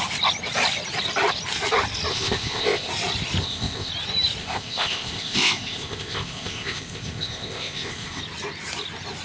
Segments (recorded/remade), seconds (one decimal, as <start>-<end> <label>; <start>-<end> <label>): 0.0-2.1 recorded; 2.1-2.9 remade; 2.9-3.4 recorded; 3.4-3.9 remade; 3.9-4.4 recorded; 4.4-8.2 remade; 8.2-9.2 recorded

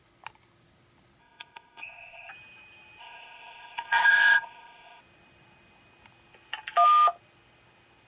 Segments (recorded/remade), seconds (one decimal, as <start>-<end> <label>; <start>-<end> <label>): 0.0-1.2 recorded; 1.2-2.3 remade; 2.3-3.0 recorded; 3.0-5.0 remade; 5.0-8.1 recorded

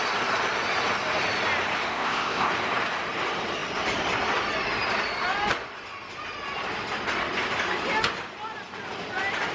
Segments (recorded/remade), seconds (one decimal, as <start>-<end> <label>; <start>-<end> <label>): 0.0-1.9 recorded; 1.9-2.5 remade; 2.5-9.5 recorded

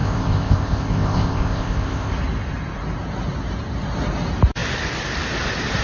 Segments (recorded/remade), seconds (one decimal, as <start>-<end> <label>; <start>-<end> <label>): 0.0-2.1 remade; 2.1-5.8 recorded

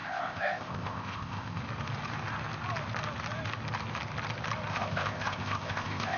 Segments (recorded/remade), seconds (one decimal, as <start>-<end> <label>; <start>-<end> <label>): 0.0-1.6 remade; 1.6-4.7 recorded; 4.7-6.2 remade

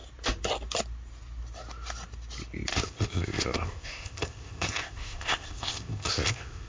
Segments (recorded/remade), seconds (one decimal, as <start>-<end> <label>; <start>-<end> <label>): 0.0-2.7 recorded; 2.7-6.7 remade